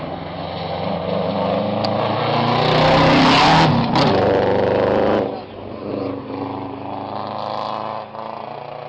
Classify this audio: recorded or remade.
recorded